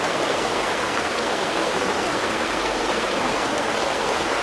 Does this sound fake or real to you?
fake